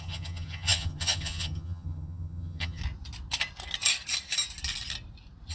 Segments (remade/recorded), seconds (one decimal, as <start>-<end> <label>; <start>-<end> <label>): 0.0-2.8 remade; 2.8-5.5 recorded